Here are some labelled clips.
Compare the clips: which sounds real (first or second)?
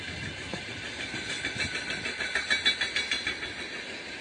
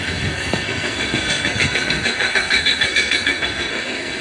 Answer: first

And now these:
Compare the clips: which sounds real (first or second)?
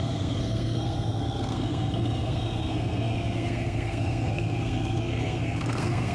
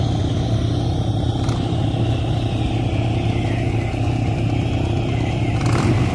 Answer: second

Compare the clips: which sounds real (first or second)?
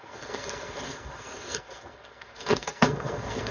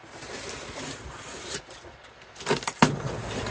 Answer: second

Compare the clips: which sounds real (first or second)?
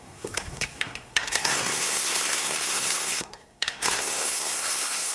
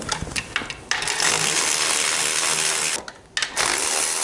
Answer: second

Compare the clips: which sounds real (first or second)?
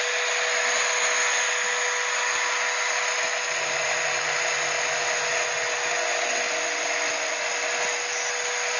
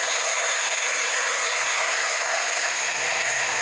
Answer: first